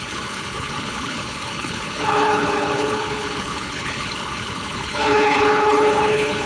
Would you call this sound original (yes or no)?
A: no